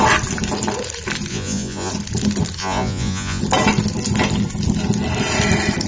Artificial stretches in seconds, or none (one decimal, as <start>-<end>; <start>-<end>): 1.3-1.9; 2.6-3.4